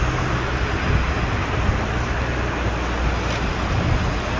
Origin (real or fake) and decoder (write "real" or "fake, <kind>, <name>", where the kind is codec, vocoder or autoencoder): real